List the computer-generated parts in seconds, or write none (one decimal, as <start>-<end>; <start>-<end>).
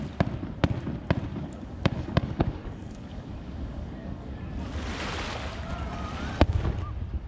1.3-4.4